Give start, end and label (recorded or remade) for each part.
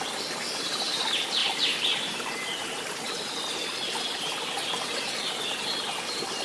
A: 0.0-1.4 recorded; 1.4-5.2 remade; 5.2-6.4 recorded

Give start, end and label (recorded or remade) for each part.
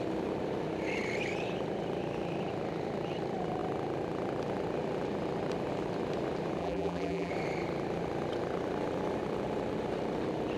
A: 0.0-6.6 recorded; 6.6-7.3 remade; 7.3-10.6 recorded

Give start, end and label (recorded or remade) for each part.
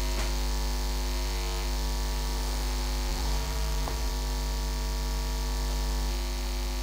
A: 0.0-3.1 recorded; 3.1-4.1 remade; 4.1-6.8 recorded